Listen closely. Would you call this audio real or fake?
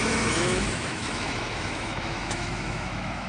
fake